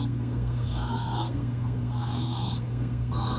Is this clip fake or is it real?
fake